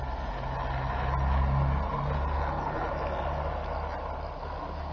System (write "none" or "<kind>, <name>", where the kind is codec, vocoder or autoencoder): none